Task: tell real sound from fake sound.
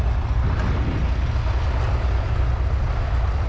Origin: real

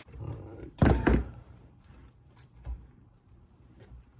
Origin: fake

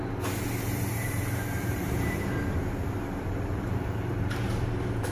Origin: fake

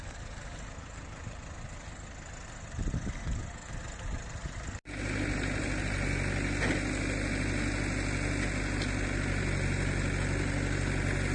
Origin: real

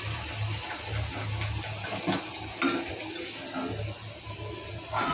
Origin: real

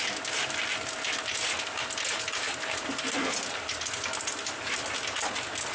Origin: real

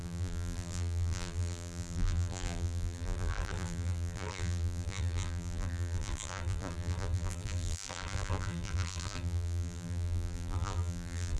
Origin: fake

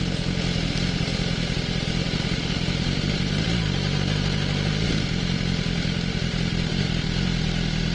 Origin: real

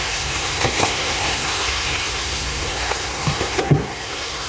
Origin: fake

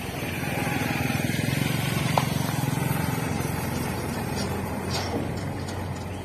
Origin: fake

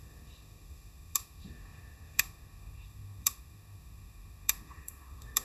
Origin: fake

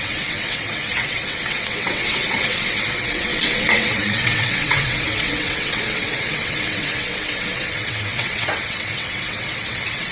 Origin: fake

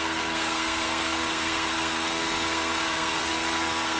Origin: fake